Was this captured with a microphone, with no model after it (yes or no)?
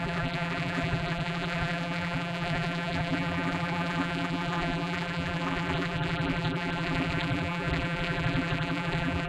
no